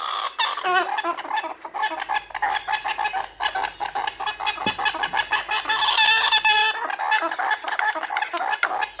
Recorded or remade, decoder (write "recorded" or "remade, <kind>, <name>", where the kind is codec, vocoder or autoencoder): recorded